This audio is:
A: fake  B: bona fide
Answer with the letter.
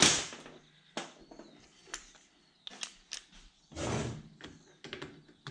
B